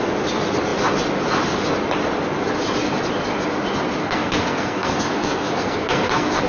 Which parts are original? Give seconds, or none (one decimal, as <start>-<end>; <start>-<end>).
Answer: 0.0-4.0